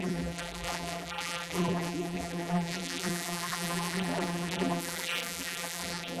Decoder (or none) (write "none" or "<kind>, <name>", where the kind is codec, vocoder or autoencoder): vocoder, BigVGAN v2